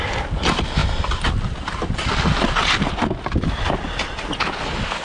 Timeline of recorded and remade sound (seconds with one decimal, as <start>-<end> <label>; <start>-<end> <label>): 0.0-5.0 recorded